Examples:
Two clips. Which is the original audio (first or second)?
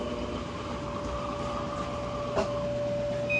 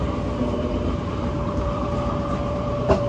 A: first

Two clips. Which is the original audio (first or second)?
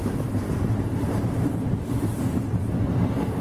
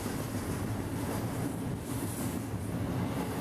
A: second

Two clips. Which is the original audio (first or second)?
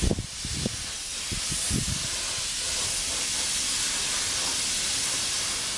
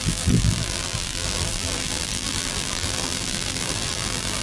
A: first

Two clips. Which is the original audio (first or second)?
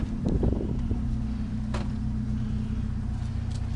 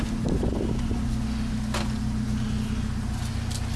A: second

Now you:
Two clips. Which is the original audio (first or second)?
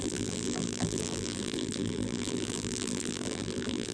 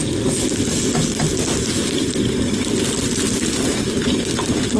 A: second